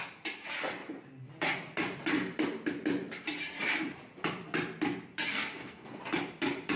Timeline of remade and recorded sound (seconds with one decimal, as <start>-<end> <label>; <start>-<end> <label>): 0.0-5.3 recorded; 5.3-6.0 remade; 6.0-6.8 recorded